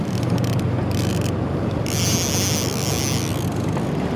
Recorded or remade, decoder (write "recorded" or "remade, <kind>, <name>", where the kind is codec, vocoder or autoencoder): recorded